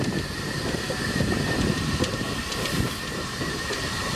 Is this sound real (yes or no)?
no